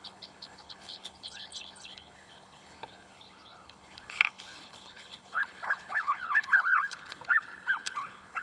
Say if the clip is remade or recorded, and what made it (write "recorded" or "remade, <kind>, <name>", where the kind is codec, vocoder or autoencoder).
remade, codec, HILCodec